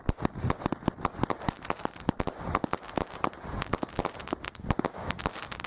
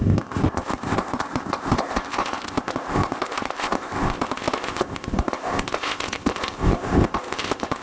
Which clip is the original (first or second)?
first